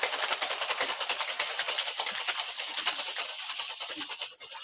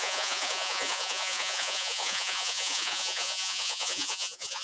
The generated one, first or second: second